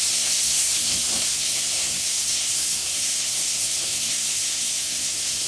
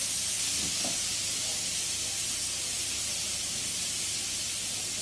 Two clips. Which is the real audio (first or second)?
second